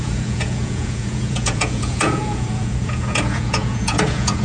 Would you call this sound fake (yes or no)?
yes